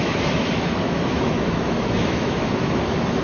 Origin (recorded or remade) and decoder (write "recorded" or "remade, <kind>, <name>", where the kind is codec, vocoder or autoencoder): remade, autoencoder, DAC-VAE